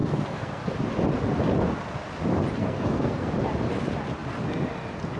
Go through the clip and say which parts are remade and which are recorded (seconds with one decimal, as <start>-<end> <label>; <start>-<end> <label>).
0.0-0.6 remade; 0.6-2.6 recorded; 2.6-3.3 remade; 3.3-5.2 recorded